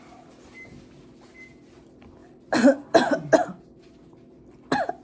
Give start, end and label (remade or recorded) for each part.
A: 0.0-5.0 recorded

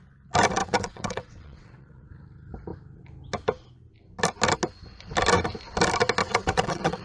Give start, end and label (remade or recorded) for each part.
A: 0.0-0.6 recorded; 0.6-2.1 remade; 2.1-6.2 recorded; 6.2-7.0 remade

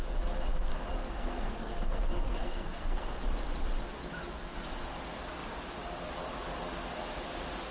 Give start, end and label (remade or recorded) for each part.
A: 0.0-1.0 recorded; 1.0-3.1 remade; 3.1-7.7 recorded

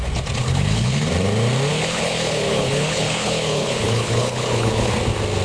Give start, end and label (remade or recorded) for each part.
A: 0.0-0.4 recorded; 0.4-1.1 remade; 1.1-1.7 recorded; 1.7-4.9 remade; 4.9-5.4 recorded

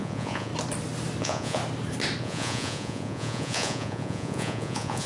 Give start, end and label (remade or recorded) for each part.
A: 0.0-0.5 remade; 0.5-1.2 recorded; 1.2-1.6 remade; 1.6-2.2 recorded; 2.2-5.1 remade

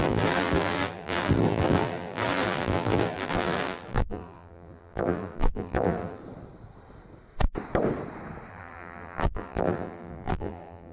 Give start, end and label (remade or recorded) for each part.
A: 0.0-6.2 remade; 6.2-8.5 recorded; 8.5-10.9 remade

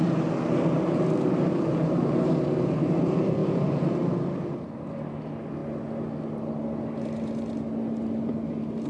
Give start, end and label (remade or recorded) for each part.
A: 0.0-8.9 recorded

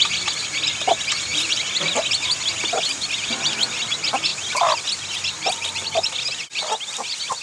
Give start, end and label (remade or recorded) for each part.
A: 0.0-7.4 recorded